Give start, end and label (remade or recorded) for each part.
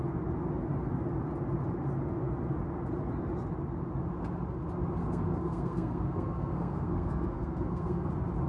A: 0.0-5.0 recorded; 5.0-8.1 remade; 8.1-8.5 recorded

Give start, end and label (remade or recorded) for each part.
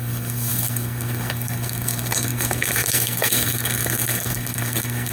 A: 0.0-5.1 remade